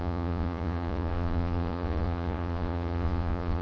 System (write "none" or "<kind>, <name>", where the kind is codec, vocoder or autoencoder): vocoder, Vocos